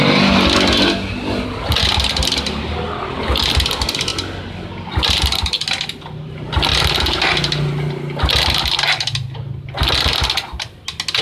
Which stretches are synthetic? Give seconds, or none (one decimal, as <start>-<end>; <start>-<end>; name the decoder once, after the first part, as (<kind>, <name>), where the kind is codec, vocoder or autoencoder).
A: none